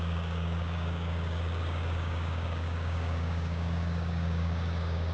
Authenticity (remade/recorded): remade